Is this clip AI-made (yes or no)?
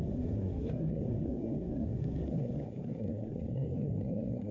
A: yes